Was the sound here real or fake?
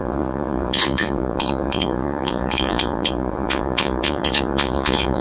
fake